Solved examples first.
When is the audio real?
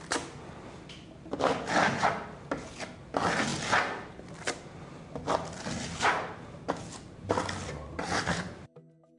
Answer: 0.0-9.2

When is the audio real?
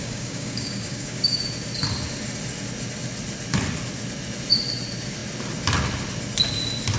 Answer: 1.4-7.0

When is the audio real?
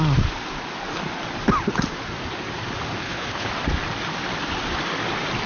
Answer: 0.0-3.0; 3.5-5.5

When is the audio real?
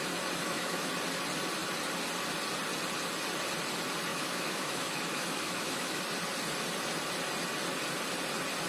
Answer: 0.0-0.4; 0.9-4.1; 6.0-8.7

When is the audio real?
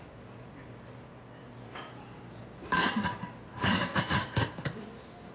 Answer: 0.0-1.7; 2.9-3.5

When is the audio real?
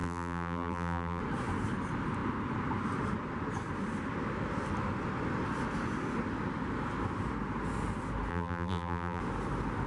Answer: 1.2-8.3; 9.2-9.9